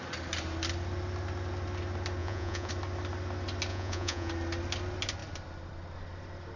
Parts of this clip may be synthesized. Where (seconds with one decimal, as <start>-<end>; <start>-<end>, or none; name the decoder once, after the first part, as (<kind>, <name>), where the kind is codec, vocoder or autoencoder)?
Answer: 2.2-2.7 (vocoder, Vocos); 3.7-4.3